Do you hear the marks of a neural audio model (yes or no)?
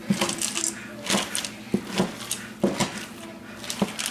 no